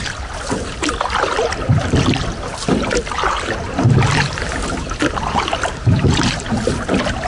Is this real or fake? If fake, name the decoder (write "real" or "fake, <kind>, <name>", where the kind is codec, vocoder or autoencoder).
real